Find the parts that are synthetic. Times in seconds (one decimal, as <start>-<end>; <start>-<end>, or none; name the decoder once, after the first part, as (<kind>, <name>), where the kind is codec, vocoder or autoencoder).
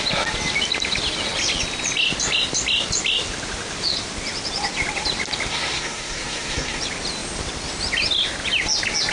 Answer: 5.5-6.8 (codec, SNAC)